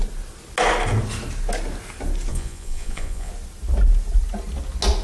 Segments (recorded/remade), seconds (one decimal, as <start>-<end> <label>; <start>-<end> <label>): 0.0-2.3 recorded; 2.3-3.3 remade; 3.3-5.0 recorded